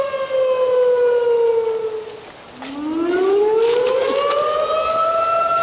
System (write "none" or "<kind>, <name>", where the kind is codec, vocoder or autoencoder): none